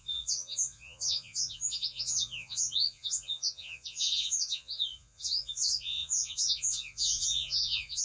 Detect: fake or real fake